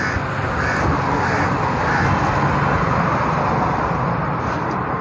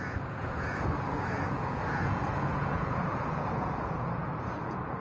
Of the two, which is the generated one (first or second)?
second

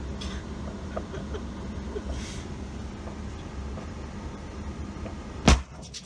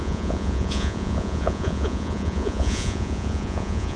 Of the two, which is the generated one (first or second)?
second